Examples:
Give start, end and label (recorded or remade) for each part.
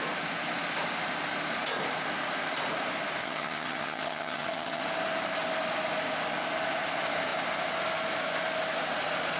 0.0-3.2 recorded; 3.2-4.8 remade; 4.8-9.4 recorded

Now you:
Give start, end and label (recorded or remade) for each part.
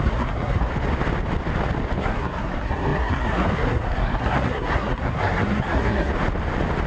0.0-0.7 remade; 0.7-2.0 recorded; 2.0-6.1 remade; 6.1-6.9 recorded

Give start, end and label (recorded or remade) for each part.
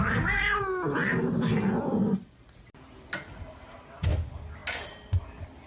0.0-0.6 remade; 0.6-5.7 recorded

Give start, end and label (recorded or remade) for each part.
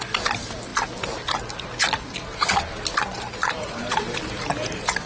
0.0-3.4 recorded; 3.4-4.3 remade; 4.3-5.1 recorded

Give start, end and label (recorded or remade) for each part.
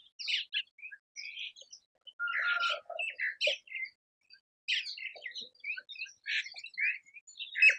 0.0-7.8 recorded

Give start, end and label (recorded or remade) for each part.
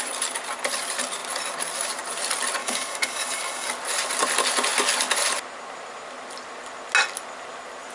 0.0-2.6 recorded; 2.6-3.7 remade; 3.7-7.9 recorded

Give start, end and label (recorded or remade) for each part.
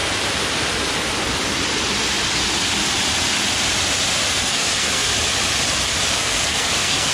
0.0-4.3 recorded; 4.3-5.1 remade; 5.1-6.1 recorded; 6.1-7.1 remade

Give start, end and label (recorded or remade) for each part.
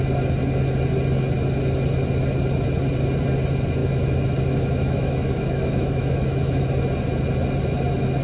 0.0-3.8 recorded; 3.8-6.7 remade; 6.7-8.2 recorded